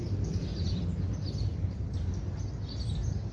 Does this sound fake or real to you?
real